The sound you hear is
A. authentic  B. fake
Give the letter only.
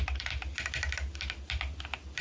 A